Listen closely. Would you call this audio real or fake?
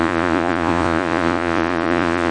fake